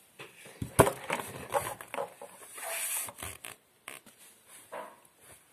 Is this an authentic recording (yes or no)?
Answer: yes